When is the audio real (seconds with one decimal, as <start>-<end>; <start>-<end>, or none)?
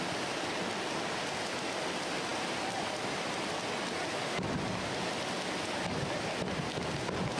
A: 0.0-7.4